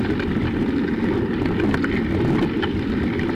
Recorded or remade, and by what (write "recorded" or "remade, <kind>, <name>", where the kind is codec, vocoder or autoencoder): recorded